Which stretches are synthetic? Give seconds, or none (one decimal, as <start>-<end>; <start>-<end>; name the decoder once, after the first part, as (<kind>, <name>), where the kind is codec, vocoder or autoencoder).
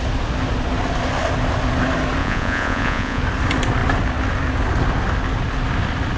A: 2.2-3.2 (vocoder, Vocos)